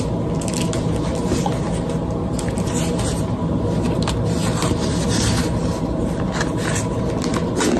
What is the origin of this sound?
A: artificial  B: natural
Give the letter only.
B